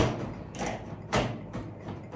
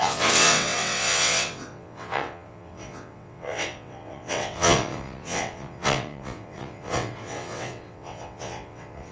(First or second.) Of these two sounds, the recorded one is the first